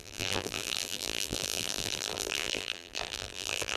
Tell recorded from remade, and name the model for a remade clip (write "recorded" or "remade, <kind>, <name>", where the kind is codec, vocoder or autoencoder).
remade, vocoder, BigVGAN v2